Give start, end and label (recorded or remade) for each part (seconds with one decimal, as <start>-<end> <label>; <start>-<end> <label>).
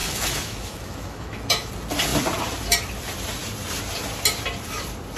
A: 0.0-1.7 remade; 1.7-5.2 recorded